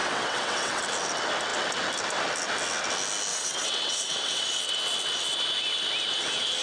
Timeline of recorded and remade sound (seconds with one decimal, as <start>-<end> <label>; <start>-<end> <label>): 0.0-0.8 remade; 0.8-3.3 recorded; 3.3-4.6 remade; 4.6-6.6 recorded